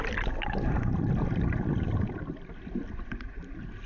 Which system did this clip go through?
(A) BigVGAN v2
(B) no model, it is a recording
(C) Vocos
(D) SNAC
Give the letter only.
B